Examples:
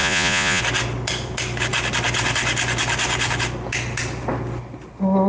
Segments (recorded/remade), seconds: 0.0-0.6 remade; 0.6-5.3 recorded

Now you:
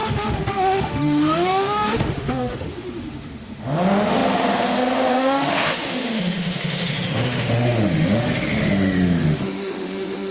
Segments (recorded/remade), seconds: 0.0-10.3 remade

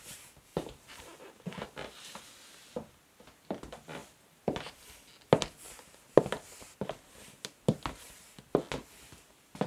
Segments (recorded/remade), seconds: 0.0-0.5 recorded; 0.5-2.2 remade; 2.2-4.0 recorded; 4.0-4.9 remade; 4.9-9.7 recorded

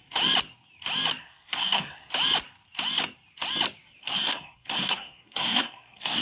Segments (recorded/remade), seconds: 0.0-1.2 recorded; 1.2-2.1 remade; 2.1-4.0 recorded; 4.0-6.2 remade